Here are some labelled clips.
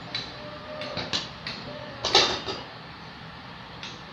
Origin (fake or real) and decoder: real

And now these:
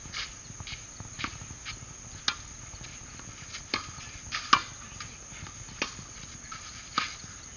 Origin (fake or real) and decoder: real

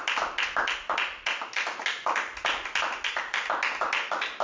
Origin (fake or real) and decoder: real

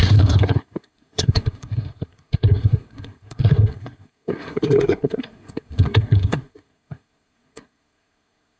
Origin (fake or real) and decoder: fake, codec, SNAC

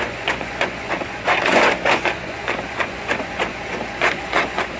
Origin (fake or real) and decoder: fake, vocoder, Vocos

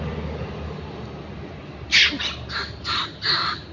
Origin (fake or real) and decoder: real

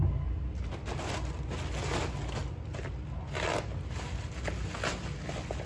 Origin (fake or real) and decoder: real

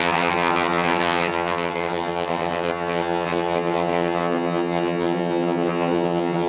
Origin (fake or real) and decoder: fake, vocoder, HiFi-GAN